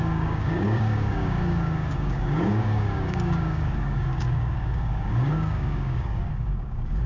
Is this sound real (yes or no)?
no